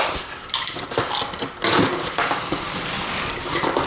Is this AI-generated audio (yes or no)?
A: no